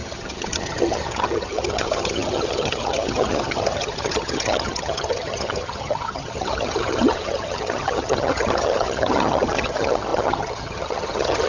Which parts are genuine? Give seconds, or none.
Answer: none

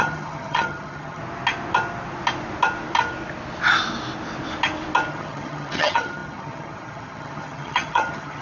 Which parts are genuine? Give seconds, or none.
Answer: 1.2-5.1

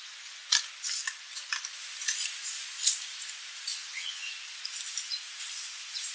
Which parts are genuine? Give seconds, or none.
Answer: 0.0-3.7; 4.3-6.1

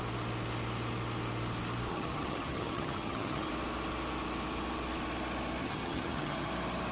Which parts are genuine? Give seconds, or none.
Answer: 0.0-1.9; 3.5-5.6; 6.5-6.9